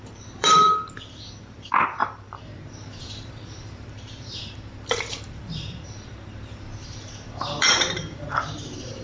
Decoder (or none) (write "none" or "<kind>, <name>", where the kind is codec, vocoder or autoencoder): vocoder, BigVGAN v2